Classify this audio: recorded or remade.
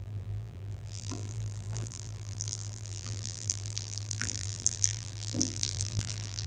remade